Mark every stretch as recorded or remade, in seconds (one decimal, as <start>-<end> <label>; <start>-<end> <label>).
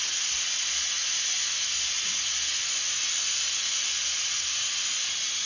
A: 0.0-5.5 recorded